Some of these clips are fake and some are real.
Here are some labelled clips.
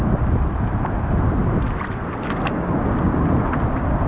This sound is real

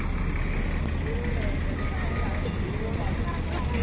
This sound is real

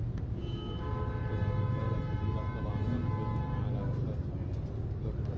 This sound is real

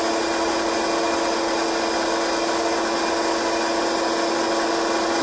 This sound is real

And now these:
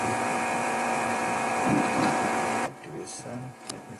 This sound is fake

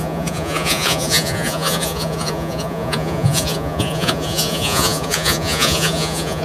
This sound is fake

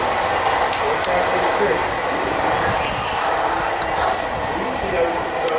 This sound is real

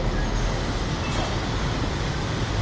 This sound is real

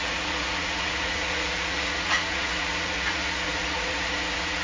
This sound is fake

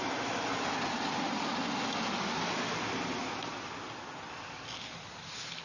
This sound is real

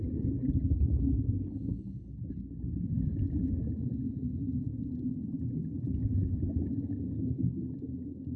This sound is real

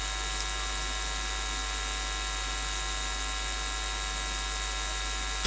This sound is real